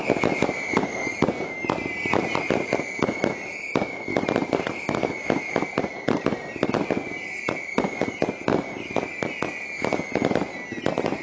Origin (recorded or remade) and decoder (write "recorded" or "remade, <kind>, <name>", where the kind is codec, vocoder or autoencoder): recorded